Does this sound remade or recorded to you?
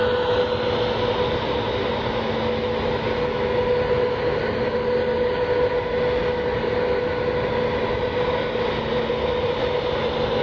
recorded